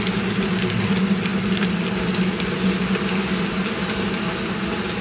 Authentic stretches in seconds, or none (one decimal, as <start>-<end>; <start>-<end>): 0.0-5.0